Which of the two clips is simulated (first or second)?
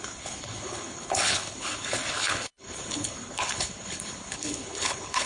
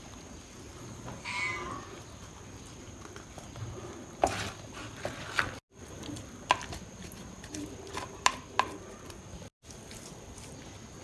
first